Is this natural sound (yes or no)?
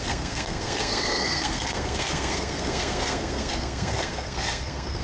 no